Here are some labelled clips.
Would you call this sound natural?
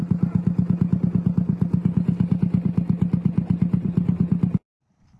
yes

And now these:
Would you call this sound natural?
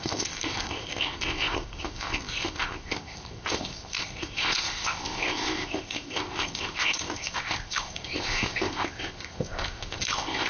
no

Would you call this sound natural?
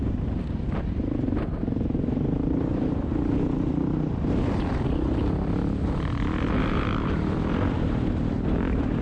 yes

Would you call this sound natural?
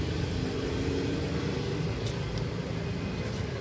yes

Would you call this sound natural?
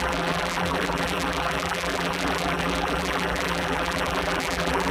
no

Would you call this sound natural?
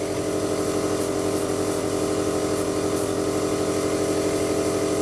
yes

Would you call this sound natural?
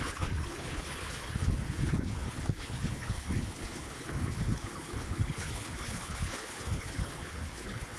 no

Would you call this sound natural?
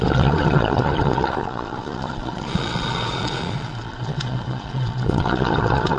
no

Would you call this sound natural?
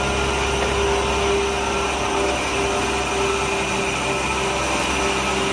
yes